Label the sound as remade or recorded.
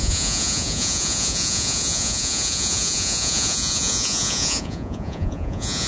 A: remade